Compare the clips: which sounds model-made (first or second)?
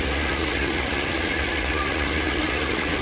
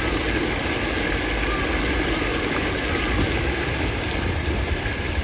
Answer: first